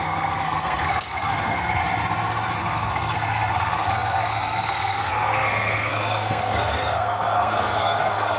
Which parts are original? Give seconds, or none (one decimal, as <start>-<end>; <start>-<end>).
1.8-2.6